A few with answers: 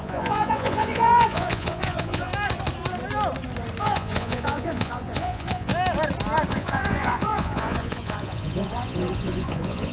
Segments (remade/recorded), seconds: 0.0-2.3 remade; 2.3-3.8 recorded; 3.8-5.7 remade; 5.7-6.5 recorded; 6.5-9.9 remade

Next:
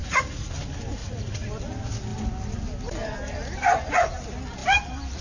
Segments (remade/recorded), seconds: 0.0-0.5 remade; 0.5-1.0 recorded; 1.0-1.5 remade; 1.5-5.2 recorded

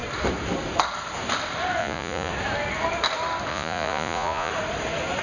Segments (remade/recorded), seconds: 0.0-1.8 recorded; 1.8-2.3 remade; 2.3-3.5 recorded; 3.5-4.5 remade; 4.5-5.2 recorded